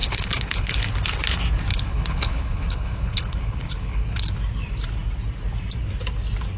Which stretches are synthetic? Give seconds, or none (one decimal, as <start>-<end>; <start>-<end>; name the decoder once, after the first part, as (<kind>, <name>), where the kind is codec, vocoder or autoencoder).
0.0-0.8 (codec, HILCodec); 1.7-4.3

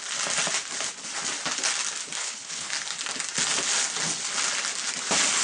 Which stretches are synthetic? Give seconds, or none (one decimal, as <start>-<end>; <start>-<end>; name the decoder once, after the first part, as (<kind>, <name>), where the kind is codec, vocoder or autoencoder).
2.2-2.7 (codec, HILCodec)

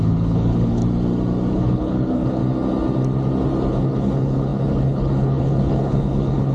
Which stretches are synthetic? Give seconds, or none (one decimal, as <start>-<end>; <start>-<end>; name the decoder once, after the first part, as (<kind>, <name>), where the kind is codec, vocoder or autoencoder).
0.0-0.8 (codec, HILCodec); 1.5-2.4; 3.7-6.5

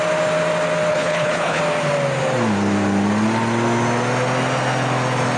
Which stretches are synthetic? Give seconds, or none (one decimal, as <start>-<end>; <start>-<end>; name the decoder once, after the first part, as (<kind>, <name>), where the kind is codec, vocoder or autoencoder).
0.9-1.6 (codec, HILCodec)

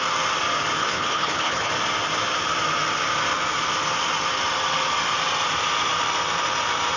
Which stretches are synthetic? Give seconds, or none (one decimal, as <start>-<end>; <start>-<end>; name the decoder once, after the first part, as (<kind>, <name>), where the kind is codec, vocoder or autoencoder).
0.8-1.7 (codec, HILCodec)

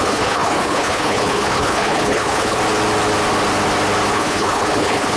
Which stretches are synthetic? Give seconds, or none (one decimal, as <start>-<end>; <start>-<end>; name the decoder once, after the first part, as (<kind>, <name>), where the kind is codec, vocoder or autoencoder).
0.0-2.6 (codec, HILCodec); 4.1-5.2

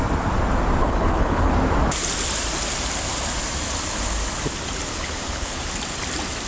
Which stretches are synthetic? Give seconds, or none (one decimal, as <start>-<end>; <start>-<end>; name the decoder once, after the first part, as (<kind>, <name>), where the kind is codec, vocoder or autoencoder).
0.8-1.5 (codec, HILCodec); 4.9-5.6